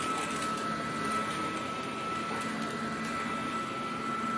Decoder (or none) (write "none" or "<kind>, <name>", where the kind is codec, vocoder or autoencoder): none